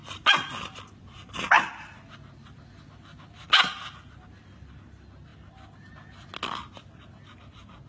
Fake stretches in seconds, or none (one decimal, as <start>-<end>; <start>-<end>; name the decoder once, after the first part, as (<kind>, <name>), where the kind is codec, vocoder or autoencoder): none